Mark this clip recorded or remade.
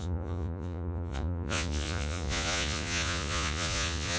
remade